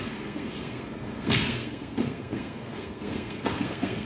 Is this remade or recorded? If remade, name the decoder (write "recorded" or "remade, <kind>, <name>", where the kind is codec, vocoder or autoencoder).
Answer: remade, codec, SNAC